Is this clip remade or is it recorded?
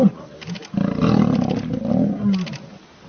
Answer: recorded